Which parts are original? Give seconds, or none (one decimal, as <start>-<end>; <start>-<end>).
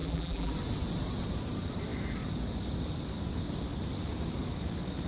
0.5-5.1